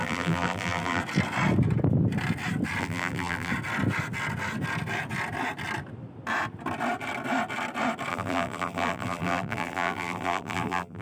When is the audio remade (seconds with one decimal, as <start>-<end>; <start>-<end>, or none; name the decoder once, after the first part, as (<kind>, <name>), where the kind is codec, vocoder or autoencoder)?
0.0-1.0 (vocoder, BigVGAN v2); 2.8-3.5; 8.1-11.0